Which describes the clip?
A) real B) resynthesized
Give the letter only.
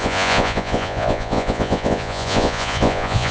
B